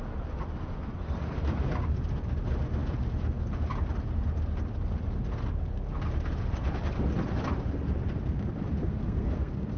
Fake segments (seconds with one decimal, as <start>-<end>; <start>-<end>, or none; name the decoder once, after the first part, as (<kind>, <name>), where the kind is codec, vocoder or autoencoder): 8.8-9.8 (codec, SNAC)